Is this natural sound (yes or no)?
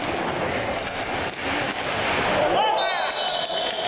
yes